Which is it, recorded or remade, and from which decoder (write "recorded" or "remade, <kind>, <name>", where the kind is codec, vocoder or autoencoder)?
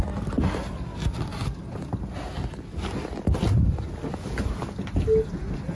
recorded